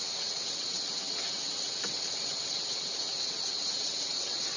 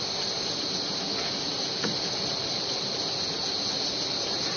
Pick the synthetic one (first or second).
first